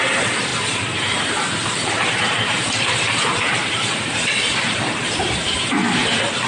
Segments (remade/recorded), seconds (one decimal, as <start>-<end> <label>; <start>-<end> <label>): 0.0-6.0 remade; 6.0-6.5 recorded